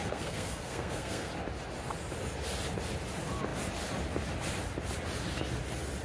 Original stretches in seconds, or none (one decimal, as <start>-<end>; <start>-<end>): 1.3-6.0